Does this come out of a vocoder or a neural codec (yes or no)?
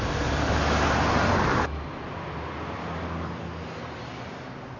no